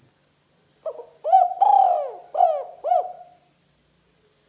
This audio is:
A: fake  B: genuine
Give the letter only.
B